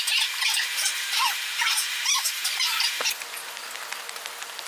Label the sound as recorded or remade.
recorded